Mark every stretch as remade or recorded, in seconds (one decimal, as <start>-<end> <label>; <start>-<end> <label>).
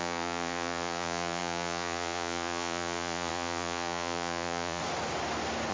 0.0-4.8 remade; 4.8-5.7 recorded